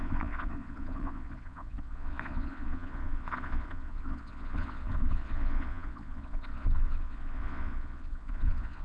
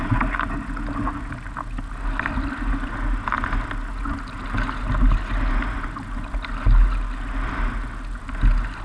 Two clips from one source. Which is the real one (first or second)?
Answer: second